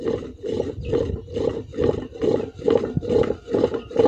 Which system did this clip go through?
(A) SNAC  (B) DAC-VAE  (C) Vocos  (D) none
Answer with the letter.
D